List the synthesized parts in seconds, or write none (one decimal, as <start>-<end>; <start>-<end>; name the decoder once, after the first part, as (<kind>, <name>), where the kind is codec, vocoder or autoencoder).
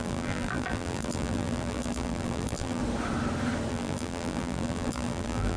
0.0-2.8 (vocoder, BigVGAN v2); 3.7-5.6